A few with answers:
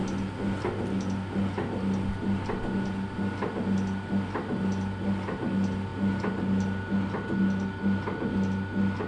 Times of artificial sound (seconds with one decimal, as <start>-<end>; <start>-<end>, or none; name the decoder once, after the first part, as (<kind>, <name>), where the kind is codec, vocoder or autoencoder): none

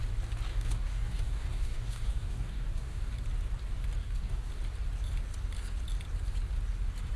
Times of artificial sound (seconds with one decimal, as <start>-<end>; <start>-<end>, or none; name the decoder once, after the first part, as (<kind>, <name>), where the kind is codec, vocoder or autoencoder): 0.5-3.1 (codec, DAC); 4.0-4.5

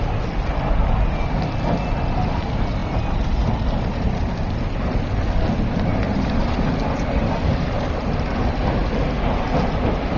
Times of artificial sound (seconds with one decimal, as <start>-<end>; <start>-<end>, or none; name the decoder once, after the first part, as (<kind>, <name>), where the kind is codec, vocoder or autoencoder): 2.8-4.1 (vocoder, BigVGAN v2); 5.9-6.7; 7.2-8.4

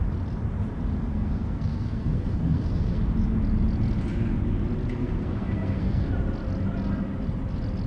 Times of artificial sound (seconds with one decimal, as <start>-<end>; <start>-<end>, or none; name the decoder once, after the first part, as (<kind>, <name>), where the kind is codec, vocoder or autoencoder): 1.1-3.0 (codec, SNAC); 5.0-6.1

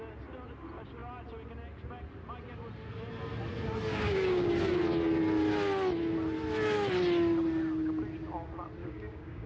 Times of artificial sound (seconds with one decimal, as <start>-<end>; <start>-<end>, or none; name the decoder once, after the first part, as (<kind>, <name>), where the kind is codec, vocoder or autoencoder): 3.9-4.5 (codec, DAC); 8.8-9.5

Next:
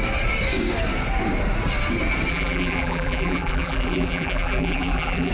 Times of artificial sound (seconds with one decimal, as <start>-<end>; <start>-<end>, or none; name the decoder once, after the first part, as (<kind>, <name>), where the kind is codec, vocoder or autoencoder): 2.3-5.3 (vocoder, BigVGAN v2)

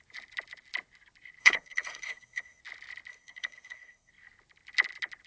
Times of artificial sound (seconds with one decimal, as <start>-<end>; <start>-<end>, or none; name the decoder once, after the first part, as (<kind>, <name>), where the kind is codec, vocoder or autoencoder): 1.4-2.6 (codec, SNAC); 3.1-4.1

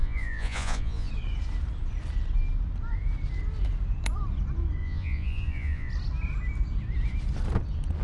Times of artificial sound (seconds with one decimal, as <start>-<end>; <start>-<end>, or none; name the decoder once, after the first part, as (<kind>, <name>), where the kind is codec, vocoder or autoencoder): 0.0-1.1 (vocoder, Vocos); 4.8-5.9